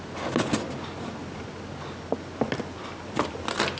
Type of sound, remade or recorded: recorded